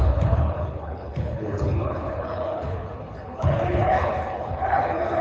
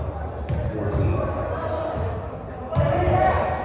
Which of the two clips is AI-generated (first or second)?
first